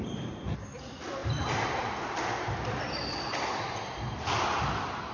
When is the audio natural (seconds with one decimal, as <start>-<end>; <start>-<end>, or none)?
0.0-5.1